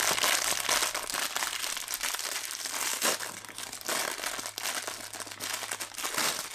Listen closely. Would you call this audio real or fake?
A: real